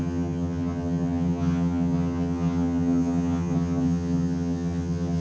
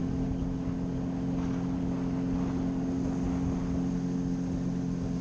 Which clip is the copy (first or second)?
first